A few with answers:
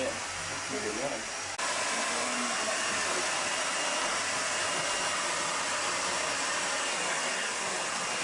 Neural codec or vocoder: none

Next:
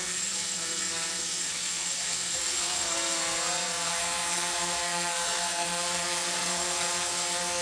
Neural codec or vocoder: codec, SNAC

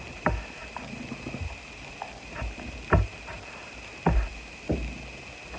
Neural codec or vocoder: none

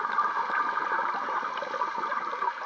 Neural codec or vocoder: none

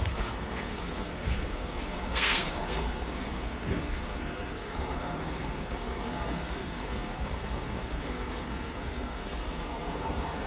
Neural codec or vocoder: codec, SNAC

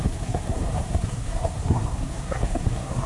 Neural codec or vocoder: codec, SNAC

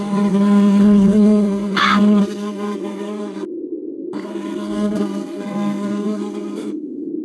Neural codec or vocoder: codec, SNAC